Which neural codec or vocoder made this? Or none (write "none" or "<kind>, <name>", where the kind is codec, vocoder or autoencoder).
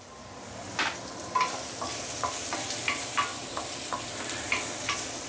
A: none